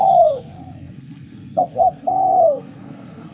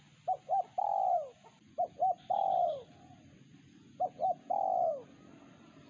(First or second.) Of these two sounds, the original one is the second